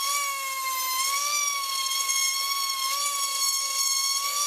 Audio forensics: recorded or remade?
recorded